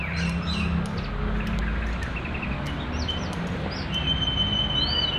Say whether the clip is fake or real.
real